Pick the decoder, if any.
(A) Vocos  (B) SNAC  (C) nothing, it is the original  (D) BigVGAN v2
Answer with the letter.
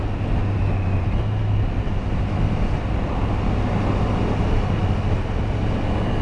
C